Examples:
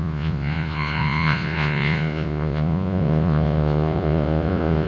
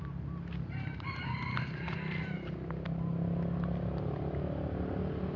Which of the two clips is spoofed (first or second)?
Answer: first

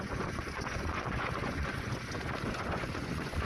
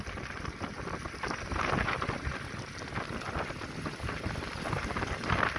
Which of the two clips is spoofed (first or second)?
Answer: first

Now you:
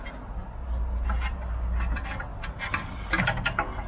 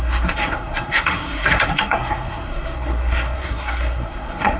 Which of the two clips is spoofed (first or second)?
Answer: second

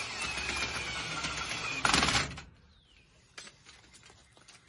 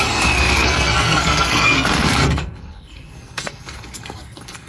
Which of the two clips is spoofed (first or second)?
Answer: second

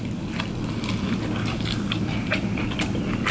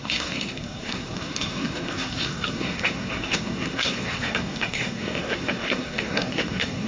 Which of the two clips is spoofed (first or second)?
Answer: second